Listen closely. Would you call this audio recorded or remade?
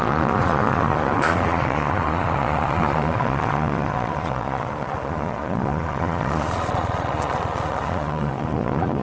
remade